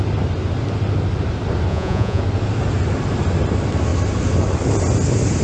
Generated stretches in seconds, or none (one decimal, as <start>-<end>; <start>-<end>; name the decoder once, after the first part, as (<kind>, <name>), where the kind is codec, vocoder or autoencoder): 1.7-2.2 (vocoder, Vocos)

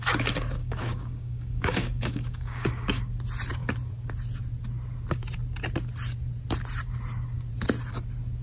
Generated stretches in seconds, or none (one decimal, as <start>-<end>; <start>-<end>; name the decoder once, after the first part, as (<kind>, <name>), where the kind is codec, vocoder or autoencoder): 0.6-3.0 (codec, DAC)

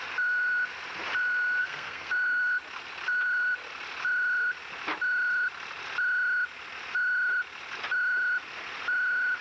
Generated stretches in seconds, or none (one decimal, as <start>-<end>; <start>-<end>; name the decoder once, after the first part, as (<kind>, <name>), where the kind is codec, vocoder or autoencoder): 1.6-2.1 (codec, SNAC)

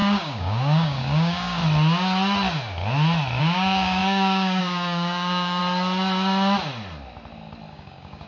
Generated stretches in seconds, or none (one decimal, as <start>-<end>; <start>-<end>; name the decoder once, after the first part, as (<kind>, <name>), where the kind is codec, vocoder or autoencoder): 0.0-1.6 (codec, DAC); 3.4-5.6; 7.7-8.3

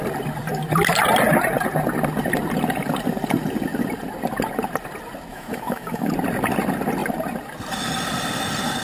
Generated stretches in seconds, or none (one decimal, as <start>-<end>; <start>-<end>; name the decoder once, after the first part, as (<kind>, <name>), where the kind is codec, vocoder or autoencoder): 5.3-6.1 (autoencoder, DAC-VAE)

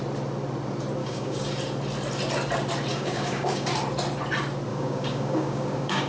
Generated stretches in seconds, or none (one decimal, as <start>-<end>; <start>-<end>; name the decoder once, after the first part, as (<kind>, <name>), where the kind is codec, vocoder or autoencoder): 1.0-1.5 (codec, DAC); 2.9-3.7; 4.7-6.1

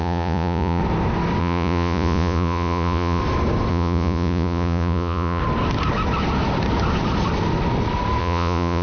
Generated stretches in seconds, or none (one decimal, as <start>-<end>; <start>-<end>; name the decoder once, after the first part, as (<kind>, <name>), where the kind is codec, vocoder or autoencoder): 0.0-0.8 (vocoder, Vocos); 1.4-3.2; 3.7-5.4; 8.2-8.8

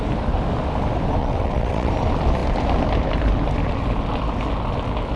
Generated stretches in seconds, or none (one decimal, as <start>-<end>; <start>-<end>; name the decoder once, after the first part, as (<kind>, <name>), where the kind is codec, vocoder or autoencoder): 1.2-1.9 (vocoder, WaveNeXt)